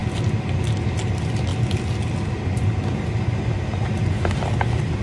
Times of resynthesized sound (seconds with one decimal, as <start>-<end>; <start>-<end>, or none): none